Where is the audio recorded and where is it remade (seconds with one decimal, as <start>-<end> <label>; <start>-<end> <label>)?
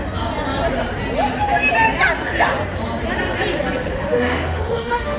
0.0-3.9 recorded; 3.9-5.2 remade